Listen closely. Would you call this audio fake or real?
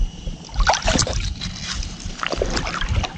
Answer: real